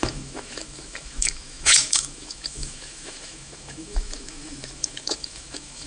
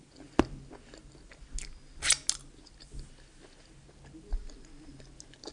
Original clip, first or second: second